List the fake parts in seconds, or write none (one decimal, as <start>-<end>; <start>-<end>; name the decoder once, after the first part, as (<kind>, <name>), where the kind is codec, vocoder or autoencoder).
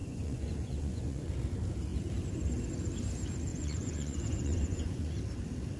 0.0-1.3 (vocoder, Vocos); 3.5-5.2